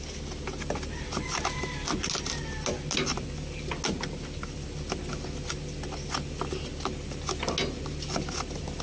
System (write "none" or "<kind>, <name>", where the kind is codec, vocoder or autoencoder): none